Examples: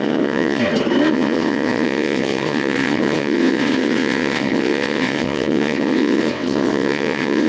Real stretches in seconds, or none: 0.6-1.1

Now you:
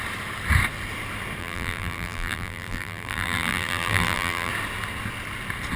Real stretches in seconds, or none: 0.0-1.4; 4.5-5.8

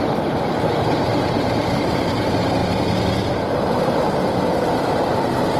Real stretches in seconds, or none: 2.6-3.3

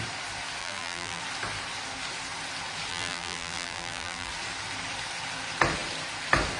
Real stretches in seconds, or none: 0.0-0.6; 1.2-2.9; 4.3-6.6

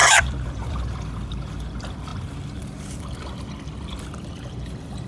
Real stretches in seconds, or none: none

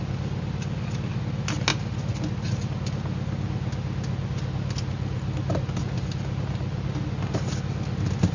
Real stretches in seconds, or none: 0.0-8.3

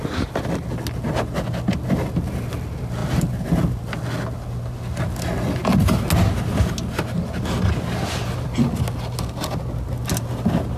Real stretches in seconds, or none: 0.0-10.8

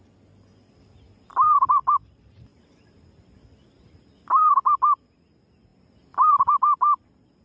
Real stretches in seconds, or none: 0.0-7.4